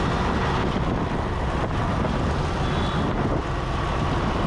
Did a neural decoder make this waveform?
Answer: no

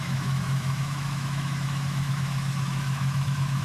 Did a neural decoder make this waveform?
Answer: yes